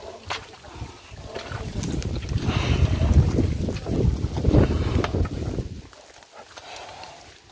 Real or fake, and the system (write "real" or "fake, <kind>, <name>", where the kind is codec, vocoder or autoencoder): real